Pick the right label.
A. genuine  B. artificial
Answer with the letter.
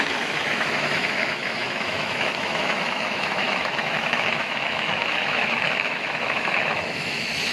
B